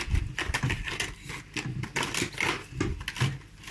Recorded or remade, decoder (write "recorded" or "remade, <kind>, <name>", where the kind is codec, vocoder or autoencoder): recorded